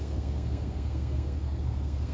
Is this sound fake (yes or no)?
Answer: yes